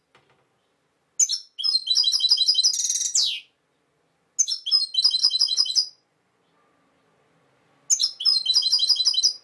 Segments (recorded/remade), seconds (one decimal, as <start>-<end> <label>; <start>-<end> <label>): 0.0-5.2 recorded; 5.2-6.4 remade; 6.4-9.4 recorded